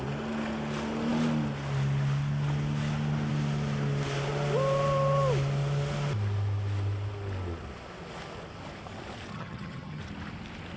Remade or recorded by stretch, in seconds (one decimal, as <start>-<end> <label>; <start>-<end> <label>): 0.0-9.3 recorded; 9.3-10.0 remade; 10.0-10.8 recorded